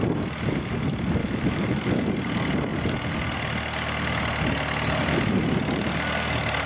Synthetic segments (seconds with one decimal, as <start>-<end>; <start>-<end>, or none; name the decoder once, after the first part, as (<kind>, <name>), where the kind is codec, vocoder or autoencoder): 1.2-1.9 (autoencoder, DAC-VAE)